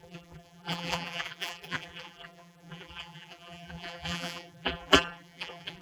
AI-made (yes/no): yes